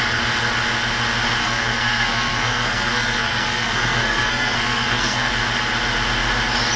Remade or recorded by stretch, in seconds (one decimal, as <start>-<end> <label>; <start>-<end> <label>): 0.0-1.4 recorded; 1.4-5.3 remade; 5.3-6.8 recorded